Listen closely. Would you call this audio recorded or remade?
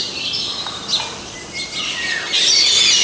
recorded